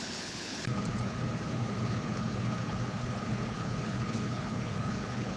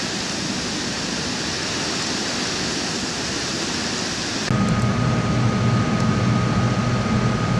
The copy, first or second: first